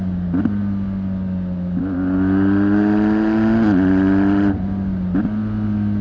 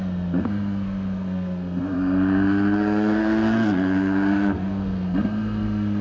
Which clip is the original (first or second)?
first